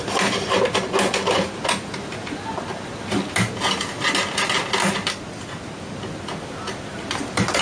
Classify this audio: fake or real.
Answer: real